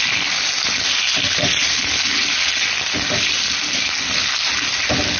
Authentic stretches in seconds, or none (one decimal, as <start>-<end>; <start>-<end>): 0.0-5.2